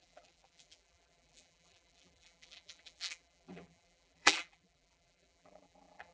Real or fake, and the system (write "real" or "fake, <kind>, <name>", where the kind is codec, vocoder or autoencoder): fake, vocoder, BigVGAN v2